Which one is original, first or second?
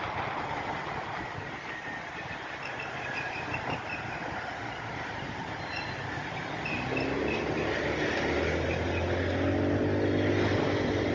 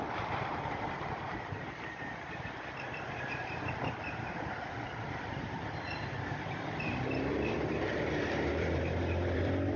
first